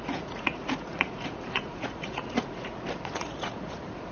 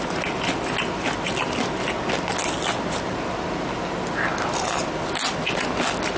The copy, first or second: first